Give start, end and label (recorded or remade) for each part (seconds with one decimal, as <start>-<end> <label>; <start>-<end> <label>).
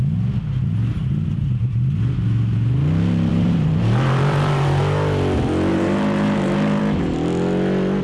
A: 0.0-1.0 recorded; 1.0-1.7 remade; 1.7-3.3 recorded; 3.3-4.8 remade; 4.8-5.7 recorded; 5.7-6.8 remade; 6.8-8.0 recorded